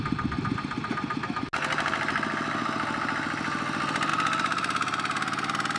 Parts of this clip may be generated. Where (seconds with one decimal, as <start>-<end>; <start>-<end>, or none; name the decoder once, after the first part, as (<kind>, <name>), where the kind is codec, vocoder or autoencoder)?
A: none